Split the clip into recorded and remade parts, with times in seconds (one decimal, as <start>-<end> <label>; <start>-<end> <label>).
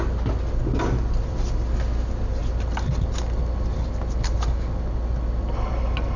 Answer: 0.0-6.2 recorded